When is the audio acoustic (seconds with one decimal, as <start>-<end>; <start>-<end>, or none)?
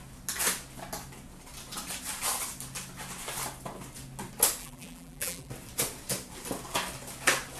0.0-4.6; 5.5-7.6